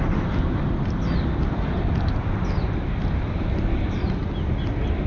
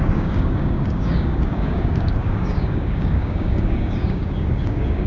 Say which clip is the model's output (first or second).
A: second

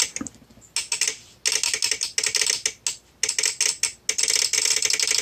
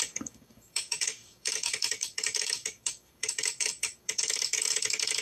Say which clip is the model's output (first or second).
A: second